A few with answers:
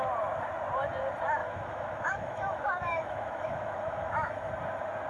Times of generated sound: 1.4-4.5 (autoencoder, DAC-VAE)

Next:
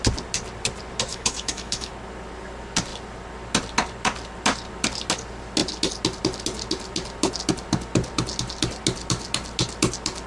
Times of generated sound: 1.1-1.9 (autoencoder, DAC-VAE)

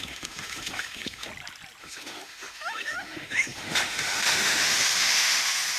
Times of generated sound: 0.0-1.3 (autoencoder, DAC-VAE); 1.8-5.8